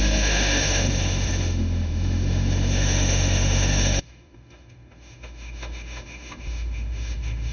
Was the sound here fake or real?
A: fake